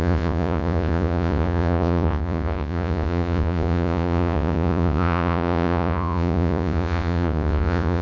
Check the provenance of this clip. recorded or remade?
remade